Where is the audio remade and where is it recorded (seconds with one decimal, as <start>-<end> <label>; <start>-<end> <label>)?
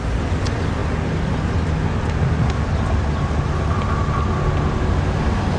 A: 0.0-5.6 recorded